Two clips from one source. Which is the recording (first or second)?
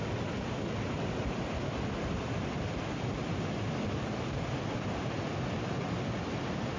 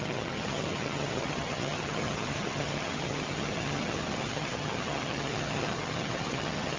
first